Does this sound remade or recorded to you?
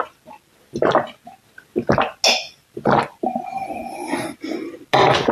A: recorded